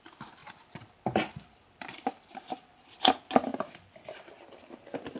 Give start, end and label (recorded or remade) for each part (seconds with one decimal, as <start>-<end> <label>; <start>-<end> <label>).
0.0-0.4 recorded; 0.4-3.0 remade; 3.0-5.2 recorded